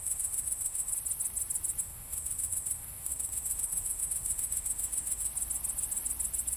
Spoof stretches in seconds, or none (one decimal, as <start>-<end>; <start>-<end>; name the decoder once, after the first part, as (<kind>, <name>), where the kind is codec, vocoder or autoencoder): 0.0-0.9 (autoencoder, DAC-VAE); 1.8-5.3